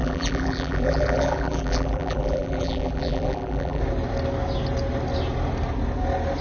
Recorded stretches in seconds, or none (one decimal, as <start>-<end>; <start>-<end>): 3.8-6.4